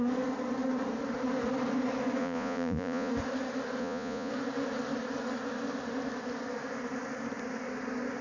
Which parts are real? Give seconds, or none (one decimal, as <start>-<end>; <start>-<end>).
0.0-2.2; 3.1-3.8; 4.3-8.2